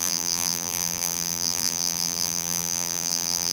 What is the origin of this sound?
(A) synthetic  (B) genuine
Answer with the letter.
A